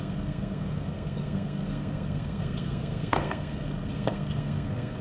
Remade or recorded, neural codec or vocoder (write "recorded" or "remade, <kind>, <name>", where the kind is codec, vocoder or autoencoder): remade, codec, SNAC